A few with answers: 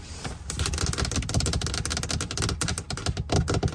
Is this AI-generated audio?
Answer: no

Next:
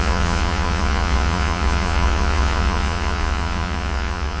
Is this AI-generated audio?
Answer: yes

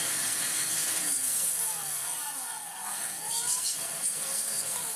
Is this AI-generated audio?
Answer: yes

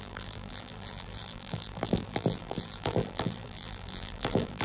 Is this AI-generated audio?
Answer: yes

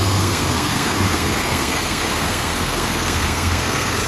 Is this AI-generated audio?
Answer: yes